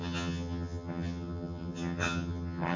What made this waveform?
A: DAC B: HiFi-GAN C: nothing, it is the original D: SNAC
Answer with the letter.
B